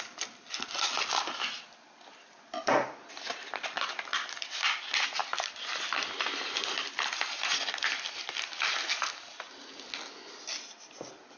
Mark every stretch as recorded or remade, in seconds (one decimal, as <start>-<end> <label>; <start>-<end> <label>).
0.0-11.4 recorded